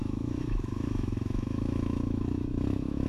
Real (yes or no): no